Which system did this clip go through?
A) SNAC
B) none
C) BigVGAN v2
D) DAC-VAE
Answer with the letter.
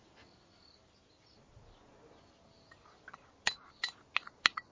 B